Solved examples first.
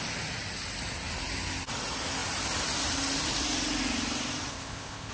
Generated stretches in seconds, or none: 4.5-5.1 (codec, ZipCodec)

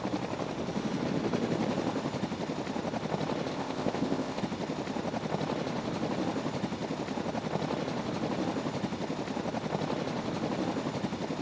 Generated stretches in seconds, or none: 3.5-4.4 (codec, ZipCodec)

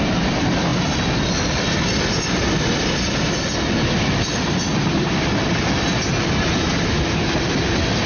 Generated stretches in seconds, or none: none

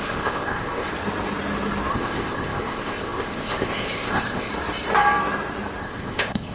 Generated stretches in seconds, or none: 0.0-0.9 (codec, ZipCodec); 1.9-4.5; 5.8-6.5

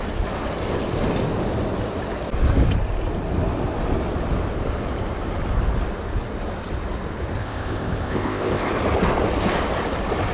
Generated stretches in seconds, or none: 7.4-8.7 (codec, ZipCodec)

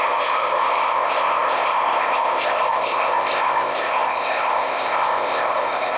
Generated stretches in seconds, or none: 0.0-6.0 (codec, ZipCodec)